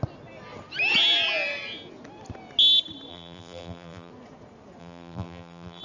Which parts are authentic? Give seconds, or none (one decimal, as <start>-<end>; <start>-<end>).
0.0-3.1; 4.1-4.8